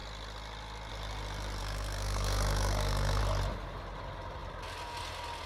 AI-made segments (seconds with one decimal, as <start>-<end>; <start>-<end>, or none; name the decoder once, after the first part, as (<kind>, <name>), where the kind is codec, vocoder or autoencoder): 1.6-3.2 (codec, SNAC)